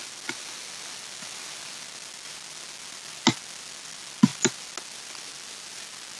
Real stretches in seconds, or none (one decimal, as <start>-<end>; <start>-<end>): 0.0-6.2